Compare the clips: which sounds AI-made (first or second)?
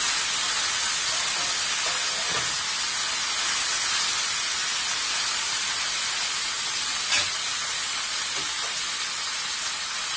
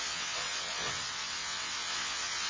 second